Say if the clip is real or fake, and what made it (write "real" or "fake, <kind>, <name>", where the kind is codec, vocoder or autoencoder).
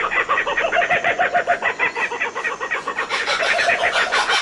fake, vocoder, Vocos